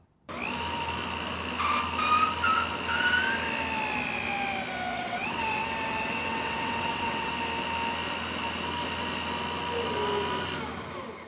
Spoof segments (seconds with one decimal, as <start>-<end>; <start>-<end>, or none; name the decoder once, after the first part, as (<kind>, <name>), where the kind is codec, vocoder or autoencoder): 4.9-7.3 (vocoder, WaveNeXt)